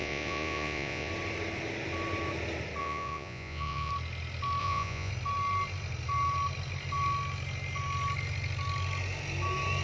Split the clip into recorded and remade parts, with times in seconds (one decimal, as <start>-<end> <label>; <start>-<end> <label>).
0.0-1.1 remade; 1.1-2.8 recorded; 2.8-3.9 remade; 3.9-4.6 recorded; 4.6-5.1 remade; 5.1-9.8 recorded